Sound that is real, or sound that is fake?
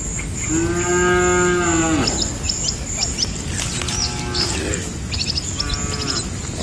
real